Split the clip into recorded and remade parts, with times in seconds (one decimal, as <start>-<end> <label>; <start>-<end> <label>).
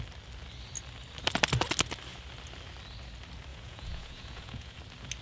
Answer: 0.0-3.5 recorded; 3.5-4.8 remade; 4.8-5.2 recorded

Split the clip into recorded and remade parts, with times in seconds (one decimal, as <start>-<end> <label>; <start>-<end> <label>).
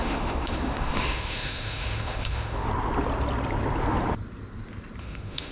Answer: 0.0-2.7 remade; 2.7-5.0 recorded; 5.0-5.5 remade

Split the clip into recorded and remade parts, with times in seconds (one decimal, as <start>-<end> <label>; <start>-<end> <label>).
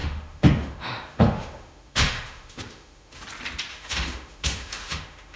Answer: 0.0-3.2 remade; 3.2-3.7 recorded; 3.7-5.4 remade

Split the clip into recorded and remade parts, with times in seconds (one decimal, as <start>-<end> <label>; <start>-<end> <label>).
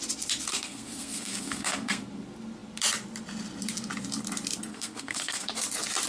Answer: 0.0-0.5 recorded; 0.5-2.0 remade; 2.0-4.7 recorded; 4.7-5.5 remade; 5.5-6.1 recorded